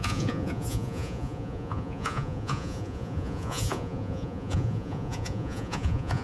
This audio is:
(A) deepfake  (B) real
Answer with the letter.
A